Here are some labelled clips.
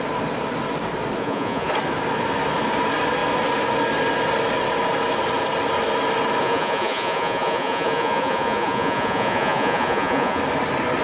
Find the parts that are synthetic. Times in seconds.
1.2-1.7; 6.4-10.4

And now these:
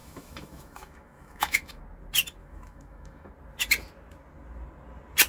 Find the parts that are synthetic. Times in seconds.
0.0-1.8; 2.4-3.3

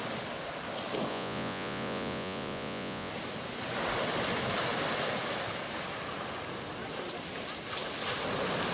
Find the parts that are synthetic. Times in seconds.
1.1-3.1

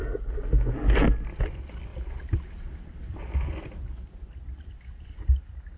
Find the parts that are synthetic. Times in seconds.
none